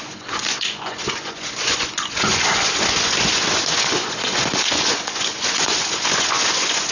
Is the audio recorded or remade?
remade